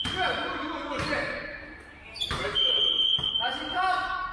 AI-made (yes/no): no